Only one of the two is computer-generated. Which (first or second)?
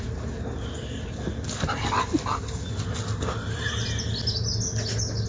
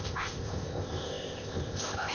second